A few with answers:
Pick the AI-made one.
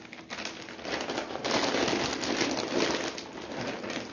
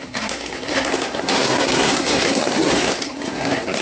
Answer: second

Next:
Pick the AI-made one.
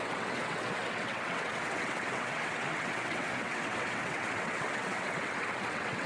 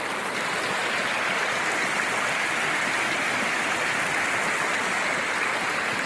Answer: first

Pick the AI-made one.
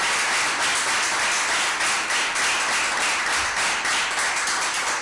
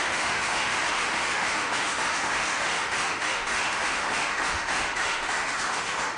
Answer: second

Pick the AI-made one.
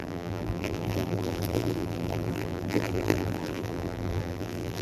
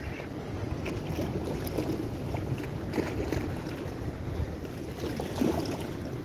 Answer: first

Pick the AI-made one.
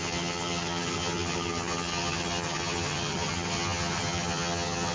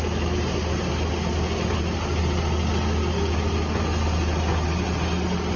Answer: first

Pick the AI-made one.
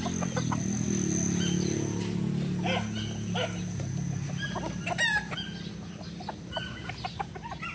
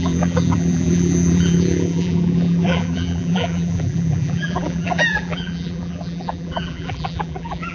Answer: second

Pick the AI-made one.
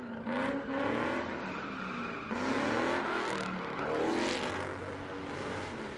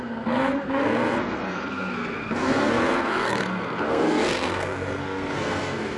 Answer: second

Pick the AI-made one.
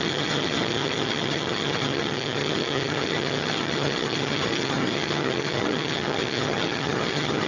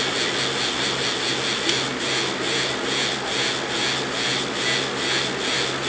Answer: first